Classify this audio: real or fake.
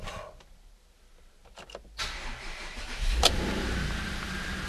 real